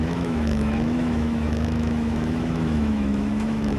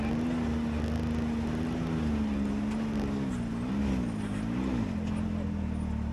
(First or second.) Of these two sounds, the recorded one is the second